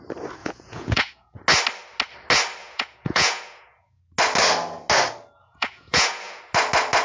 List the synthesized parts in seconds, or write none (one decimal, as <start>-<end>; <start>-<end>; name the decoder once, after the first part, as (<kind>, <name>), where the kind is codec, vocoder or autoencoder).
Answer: 0.4-1.4 (vocoder, Vocos); 2.6-4.0; 5.4-6.4

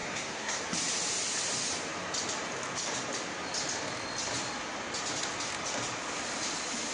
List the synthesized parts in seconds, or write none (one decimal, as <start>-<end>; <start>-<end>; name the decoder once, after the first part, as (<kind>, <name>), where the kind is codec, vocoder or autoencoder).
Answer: 0.0-0.6 (codec, SNAC)

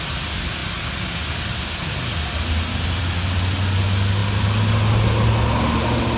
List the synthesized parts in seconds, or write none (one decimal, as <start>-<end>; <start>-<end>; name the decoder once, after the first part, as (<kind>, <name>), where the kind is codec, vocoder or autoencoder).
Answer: none

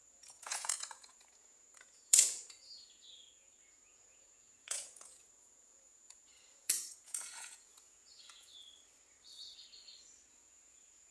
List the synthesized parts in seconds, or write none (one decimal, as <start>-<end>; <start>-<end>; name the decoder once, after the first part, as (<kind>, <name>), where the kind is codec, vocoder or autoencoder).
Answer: 0.0-8.5 (vocoder, Vocos); 10.3-11.1